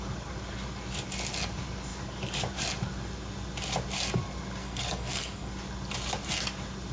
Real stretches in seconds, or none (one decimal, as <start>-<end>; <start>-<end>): 0.0-4.6; 5.5-6.9